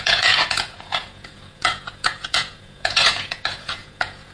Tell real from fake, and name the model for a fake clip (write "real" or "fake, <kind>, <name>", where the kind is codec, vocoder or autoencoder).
fake, vocoder, Vocos